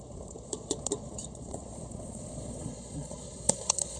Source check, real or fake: fake